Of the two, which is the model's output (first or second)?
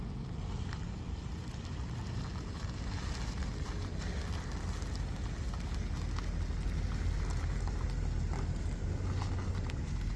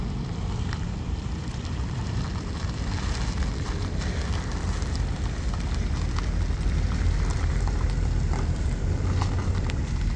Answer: second